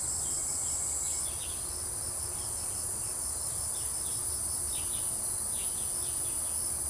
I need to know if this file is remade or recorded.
recorded